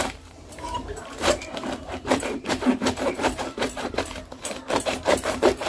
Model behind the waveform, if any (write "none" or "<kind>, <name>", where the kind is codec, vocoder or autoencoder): vocoder, BigVGAN v2